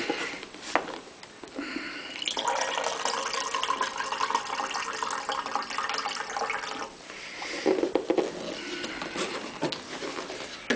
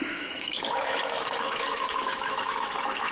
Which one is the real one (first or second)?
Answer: first